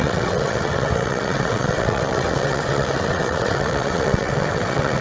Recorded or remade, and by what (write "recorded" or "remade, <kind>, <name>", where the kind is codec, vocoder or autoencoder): remade, vocoder, WaveNeXt